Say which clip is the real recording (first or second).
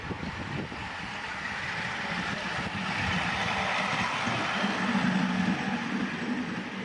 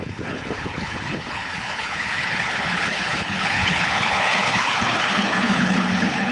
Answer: first